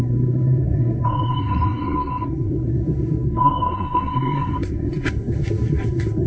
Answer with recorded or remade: remade